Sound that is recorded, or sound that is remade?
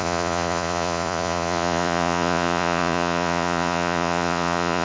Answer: remade